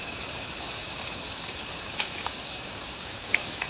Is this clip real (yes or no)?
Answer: no